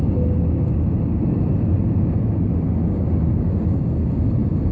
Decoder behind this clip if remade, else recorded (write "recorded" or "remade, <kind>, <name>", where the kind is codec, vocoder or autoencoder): recorded